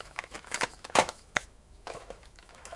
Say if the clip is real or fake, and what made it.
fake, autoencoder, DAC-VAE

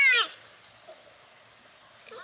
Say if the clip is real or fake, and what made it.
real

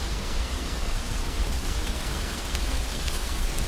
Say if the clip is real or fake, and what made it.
fake, codec, SNAC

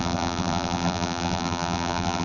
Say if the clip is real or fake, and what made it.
fake, vocoder, BigVGAN v2